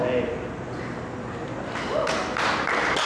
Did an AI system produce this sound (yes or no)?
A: no